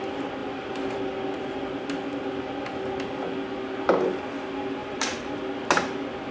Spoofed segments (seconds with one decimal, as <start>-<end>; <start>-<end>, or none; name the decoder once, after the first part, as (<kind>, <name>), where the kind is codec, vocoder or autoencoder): 0.4-1.0 (vocoder, BigVGAN v2); 4.8-5.4